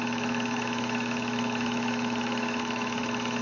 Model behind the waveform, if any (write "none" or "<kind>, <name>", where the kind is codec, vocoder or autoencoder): autoencoder, DAC-VAE